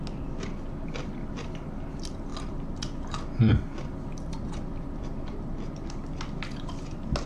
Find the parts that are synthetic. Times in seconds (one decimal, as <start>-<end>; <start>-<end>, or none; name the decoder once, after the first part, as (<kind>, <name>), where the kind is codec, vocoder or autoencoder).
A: 2.3-5.3 (vocoder, BigVGAN v2)